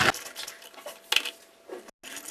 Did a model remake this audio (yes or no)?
no